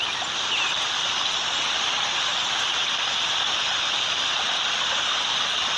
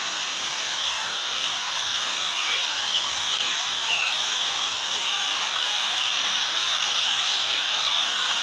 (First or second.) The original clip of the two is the first